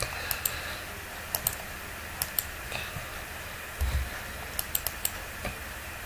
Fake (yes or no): no